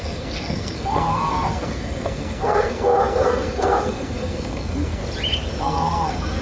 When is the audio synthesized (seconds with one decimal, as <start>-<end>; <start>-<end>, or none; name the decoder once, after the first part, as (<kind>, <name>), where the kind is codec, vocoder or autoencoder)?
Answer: 0.0-5.0 (codec, SNAC); 5.6-6.4